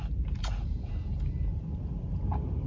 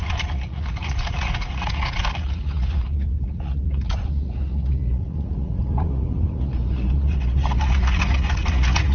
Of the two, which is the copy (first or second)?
second